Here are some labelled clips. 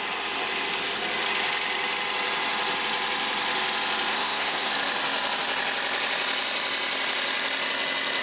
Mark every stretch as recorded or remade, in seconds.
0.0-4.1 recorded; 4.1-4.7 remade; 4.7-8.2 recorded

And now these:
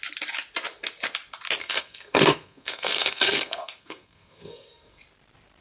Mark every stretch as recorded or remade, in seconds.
0.0-1.6 recorded; 1.6-5.0 remade; 5.0-5.6 recorded

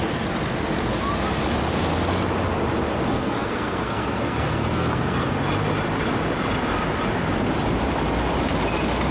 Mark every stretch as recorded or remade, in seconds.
0.0-3.1 recorded; 3.1-5.4 remade; 5.4-9.1 recorded